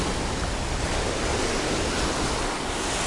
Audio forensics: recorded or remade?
recorded